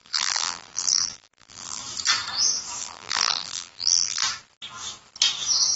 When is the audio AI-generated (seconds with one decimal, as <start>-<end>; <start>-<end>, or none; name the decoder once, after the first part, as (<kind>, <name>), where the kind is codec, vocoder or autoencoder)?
0.0-1.8 (vocoder, BigVGAN v2); 2.8-4.2